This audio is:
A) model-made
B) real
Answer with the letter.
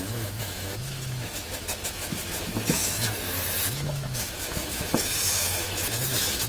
A